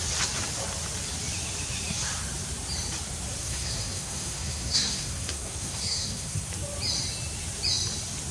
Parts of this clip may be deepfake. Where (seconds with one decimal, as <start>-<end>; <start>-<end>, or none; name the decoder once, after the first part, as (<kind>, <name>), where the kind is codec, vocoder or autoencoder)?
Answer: 3.4-6.5 (codec, SNAC)